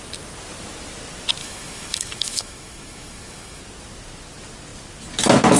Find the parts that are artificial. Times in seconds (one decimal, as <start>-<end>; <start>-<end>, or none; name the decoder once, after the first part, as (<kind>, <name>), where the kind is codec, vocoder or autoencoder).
1.4-3.6 (autoencoder, DAC-VAE)